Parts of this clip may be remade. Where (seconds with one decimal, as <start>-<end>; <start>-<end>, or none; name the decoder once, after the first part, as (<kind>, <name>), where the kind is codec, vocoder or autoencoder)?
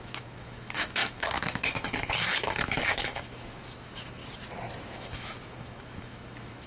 0.0-4.2 (autoencoder, DAC-VAE); 4.8-6.7